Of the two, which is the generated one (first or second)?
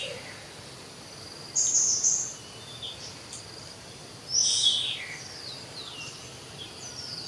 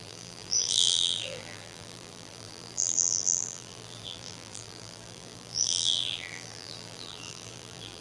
second